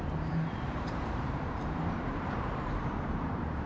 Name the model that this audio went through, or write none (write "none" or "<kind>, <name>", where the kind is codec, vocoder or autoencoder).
vocoder, BigVGAN v2